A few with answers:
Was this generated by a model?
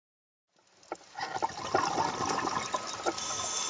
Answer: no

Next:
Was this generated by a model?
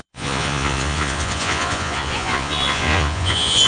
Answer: yes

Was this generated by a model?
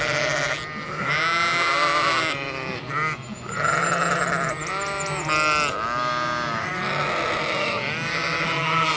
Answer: no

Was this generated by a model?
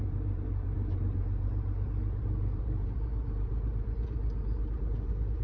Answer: yes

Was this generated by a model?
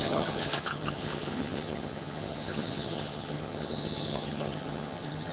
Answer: yes